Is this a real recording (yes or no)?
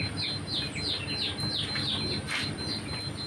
yes